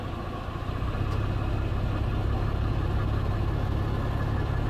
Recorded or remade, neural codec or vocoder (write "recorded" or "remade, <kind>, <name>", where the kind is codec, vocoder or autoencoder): recorded